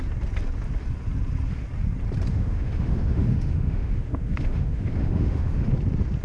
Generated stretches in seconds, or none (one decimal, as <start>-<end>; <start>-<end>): 2.3-5.7